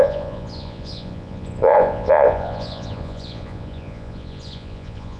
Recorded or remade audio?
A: remade